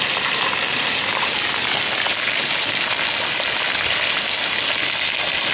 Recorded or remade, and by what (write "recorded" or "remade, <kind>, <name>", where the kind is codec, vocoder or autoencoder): recorded